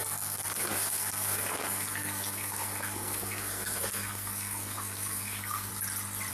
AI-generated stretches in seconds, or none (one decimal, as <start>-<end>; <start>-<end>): 0.0-5.7